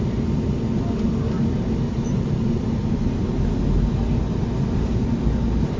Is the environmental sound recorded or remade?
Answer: recorded